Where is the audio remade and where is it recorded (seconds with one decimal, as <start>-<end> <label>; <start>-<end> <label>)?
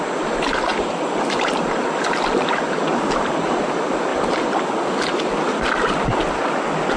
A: 0.0-7.0 recorded